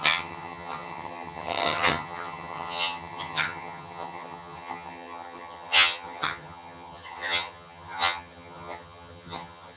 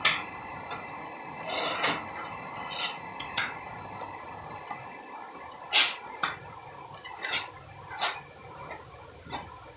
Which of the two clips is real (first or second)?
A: second